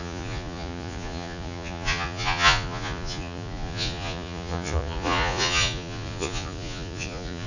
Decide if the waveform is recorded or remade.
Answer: remade